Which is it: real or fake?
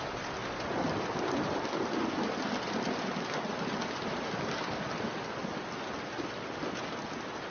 real